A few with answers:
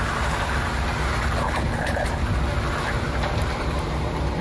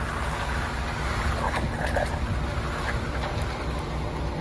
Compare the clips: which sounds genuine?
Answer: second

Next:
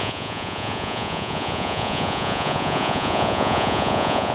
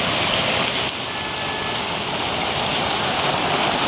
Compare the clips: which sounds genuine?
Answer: second